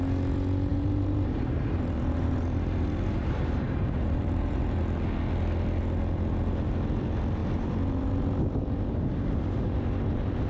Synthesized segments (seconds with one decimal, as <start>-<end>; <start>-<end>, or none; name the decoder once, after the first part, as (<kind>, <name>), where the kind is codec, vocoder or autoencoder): 0.7-4.6 (vocoder, BigVGAN v2); 7.4-8.1